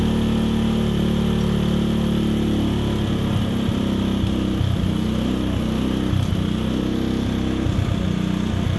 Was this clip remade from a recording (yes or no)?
no